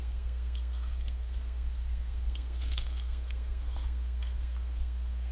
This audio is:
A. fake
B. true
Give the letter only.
A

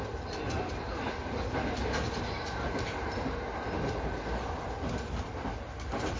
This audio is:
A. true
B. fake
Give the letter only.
A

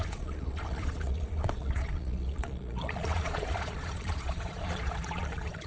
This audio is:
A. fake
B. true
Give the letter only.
A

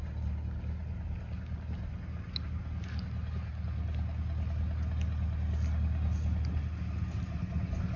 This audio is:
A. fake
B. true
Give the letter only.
B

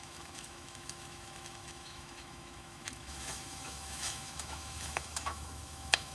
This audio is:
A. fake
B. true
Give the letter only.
A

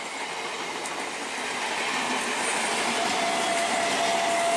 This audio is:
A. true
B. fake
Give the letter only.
A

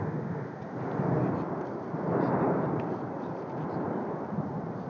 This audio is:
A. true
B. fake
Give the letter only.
A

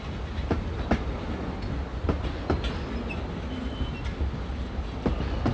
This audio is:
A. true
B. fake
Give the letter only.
A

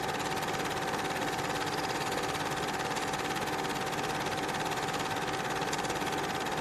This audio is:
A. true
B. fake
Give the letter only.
A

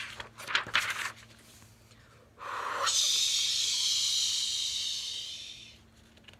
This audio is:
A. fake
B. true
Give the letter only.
B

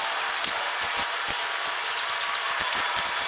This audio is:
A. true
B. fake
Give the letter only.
A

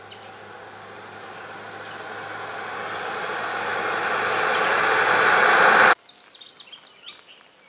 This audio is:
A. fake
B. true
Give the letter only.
B